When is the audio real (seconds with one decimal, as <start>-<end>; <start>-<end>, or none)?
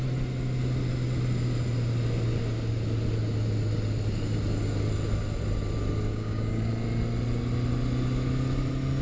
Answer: 0.0-6.1; 6.7-9.0